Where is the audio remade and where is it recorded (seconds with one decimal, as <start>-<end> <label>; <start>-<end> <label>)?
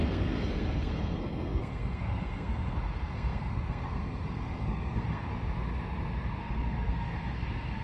0.0-5.3 remade; 5.3-6.4 recorded; 6.4-7.8 remade